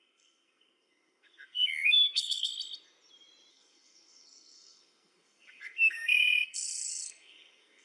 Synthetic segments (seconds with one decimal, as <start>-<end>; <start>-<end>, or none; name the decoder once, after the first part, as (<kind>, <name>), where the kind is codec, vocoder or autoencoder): 0.0-2.5 (codec, SNAC); 3.5-7.8